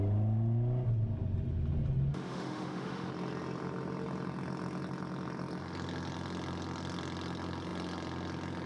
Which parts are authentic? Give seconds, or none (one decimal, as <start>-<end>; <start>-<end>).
0.0-2.1; 3.1-8.7